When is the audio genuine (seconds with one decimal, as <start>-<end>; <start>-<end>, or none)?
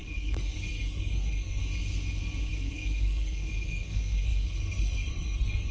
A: 1.6-2.5